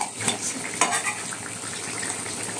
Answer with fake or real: real